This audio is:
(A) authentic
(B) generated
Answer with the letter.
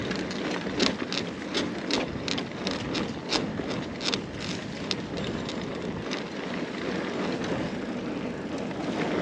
A